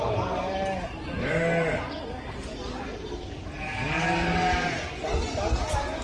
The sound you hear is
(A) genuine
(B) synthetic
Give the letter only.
A